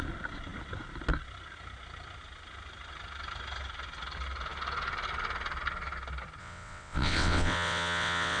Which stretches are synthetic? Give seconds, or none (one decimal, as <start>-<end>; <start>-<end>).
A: 6.4-8.4